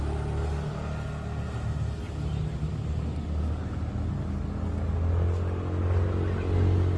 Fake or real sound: real